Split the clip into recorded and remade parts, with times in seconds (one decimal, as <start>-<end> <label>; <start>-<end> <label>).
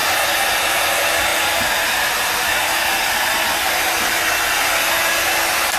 0.0-1.3 recorded; 1.3-4.8 remade; 4.8-5.8 recorded